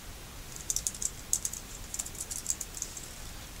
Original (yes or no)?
yes